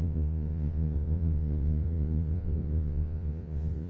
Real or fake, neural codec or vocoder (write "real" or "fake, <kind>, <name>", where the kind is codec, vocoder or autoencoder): fake, vocoder, Vocos